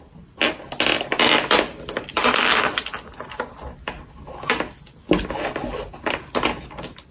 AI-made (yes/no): no